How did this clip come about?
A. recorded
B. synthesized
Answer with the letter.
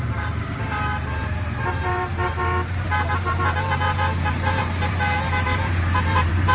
B